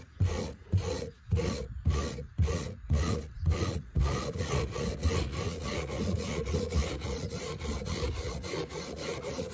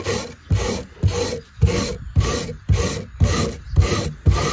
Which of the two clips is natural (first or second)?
second